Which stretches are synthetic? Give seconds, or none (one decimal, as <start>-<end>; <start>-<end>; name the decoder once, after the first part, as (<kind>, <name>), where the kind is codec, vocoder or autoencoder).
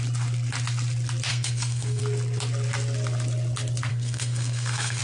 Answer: 1.3-2.0 (codec, SNAC); 3.9-5.0